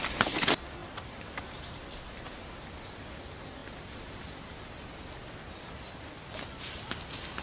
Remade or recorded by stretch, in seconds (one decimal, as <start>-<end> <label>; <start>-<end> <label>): 0.0-0.8 recorded; 0.8-1.8 remade; 1.8-3.6 recorded; 3.6-4.8 remade; 4.8-7.4 recorded